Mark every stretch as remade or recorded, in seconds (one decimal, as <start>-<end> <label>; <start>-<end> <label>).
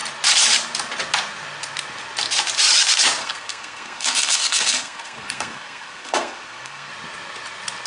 0.0-3.2 recorded; 3.2-6.9 remade; 6.9-7.9 recorded